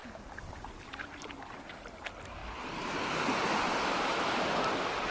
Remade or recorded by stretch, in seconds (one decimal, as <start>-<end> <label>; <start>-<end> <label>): 0.0-5.1 recorded